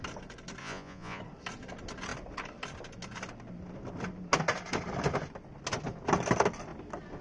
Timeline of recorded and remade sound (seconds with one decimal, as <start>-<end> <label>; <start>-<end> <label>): 0.0-0.6 recorded; 0.6-1.2 remade; 1.2-7.2 recorded